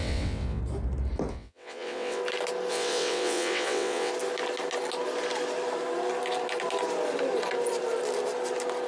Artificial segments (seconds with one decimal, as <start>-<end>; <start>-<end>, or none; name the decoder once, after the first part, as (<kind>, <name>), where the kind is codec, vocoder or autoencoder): 0.0-0.6 (vocoder, WaveNeXt); 1.3-2.2; 2.7-4.1